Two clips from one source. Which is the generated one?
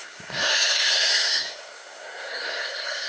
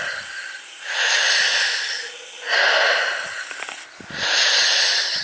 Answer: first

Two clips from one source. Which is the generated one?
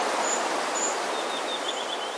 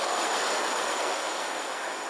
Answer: second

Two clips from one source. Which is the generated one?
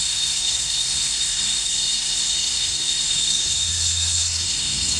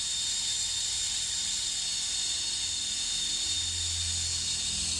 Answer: first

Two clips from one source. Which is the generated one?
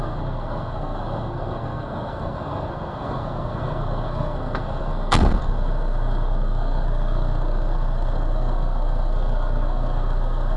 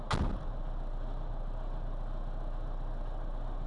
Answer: first